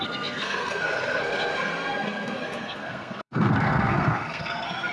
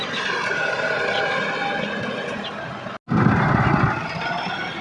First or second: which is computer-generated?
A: first